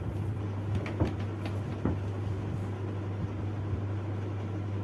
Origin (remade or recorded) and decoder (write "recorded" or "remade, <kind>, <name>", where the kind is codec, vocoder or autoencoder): recorded